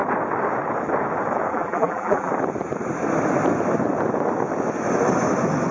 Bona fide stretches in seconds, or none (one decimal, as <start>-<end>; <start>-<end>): 0.0-1.5; 2.3-5.7